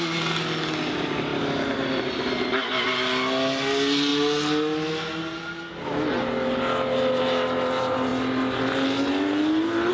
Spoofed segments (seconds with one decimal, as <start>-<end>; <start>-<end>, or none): none